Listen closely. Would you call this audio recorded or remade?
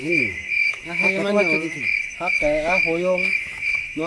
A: remade